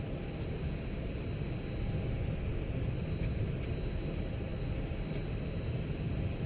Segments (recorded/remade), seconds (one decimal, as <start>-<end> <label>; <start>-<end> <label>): 0.0-6.5 recorded